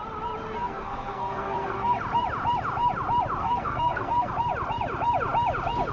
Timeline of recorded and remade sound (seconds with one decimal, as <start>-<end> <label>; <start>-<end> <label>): 0.0-0.6 recorded; 0.6-2.0 remade; 2.0-3.4 recorded; 3.4-4.3 remade; 4.3-5.9 recorded